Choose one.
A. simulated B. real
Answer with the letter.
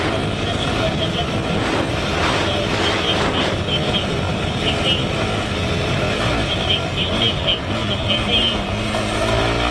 B